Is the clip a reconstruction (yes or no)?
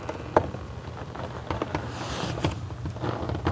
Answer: no